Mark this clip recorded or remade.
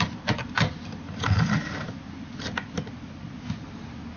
recorded